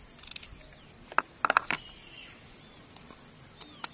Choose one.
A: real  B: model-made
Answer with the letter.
A